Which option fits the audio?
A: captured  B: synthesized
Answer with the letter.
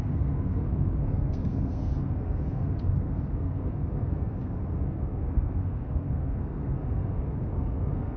B